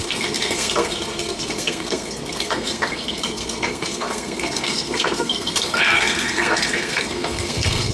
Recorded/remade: remade